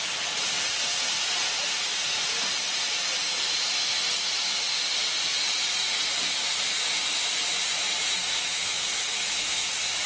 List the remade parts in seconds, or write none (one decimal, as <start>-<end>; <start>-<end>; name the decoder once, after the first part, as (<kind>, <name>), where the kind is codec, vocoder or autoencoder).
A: 8.2-9.7 (autoencoder, DAC-VAE)